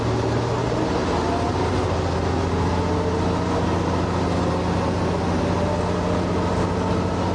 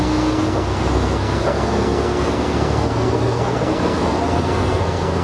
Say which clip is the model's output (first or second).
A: second